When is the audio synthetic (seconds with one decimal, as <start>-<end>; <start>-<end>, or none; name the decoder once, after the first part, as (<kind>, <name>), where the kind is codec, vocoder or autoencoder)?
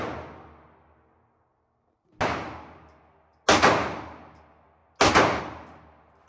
none